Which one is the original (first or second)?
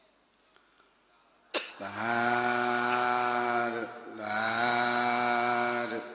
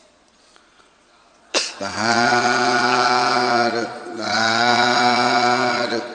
first